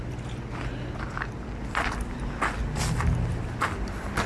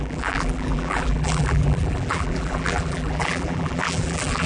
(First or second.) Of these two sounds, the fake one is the second